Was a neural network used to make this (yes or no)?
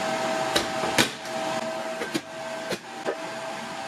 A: no